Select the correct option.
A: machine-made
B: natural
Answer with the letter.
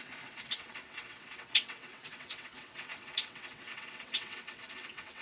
A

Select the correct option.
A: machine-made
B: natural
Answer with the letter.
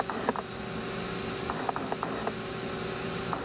B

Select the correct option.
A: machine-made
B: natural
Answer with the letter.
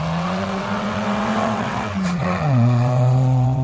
A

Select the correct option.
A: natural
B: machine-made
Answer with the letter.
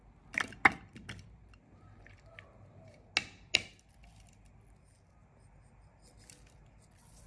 A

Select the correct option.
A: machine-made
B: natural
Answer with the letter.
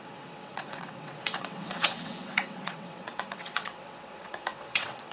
A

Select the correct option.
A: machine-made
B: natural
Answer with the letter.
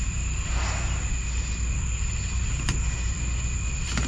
B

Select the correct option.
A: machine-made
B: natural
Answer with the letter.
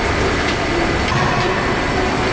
B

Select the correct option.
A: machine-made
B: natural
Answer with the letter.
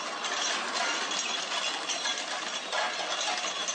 B